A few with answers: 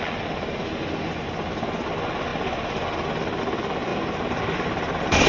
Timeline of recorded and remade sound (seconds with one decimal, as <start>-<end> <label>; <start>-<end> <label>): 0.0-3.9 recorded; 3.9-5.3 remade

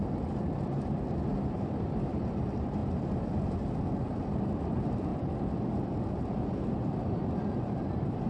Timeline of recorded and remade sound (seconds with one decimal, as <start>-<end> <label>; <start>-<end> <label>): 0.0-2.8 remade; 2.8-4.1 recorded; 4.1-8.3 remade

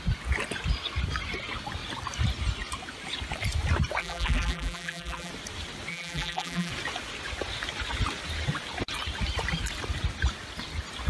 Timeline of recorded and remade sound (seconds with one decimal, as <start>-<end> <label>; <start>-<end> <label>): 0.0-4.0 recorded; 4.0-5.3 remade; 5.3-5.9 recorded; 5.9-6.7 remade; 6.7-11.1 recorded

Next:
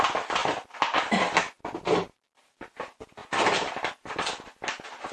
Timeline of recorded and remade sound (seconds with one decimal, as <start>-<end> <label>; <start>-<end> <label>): 0.0-0.4 remade; 0.4-1.6 recorded; 1.6-3.2 remade; 3.2-3.9 recorded; 3.9-5.1 remade